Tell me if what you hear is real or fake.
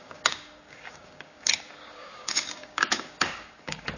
fake